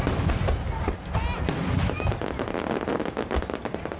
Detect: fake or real real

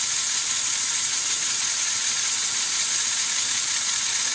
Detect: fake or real fake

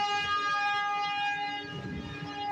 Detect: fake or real real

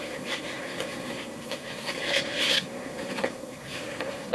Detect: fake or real fake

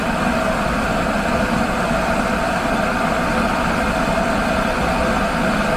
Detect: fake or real real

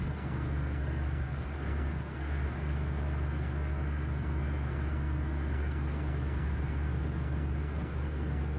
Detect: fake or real fake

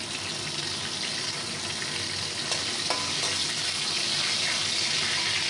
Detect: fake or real real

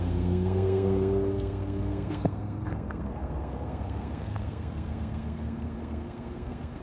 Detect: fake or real fake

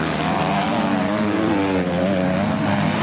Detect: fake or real real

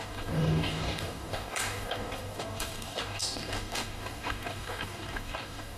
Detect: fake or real fake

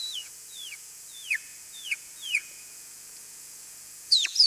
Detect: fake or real fake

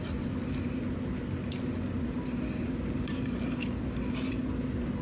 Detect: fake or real real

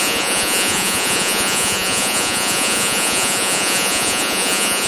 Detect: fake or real fake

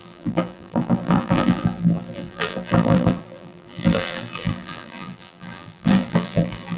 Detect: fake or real fake